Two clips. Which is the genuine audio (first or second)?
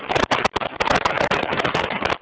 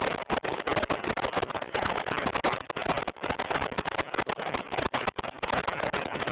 second